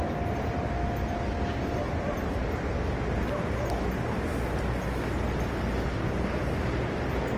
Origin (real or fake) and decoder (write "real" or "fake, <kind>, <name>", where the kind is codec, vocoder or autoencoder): real